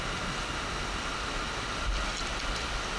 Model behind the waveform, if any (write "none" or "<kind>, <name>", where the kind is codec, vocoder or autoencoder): none